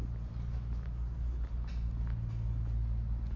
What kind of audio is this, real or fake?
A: real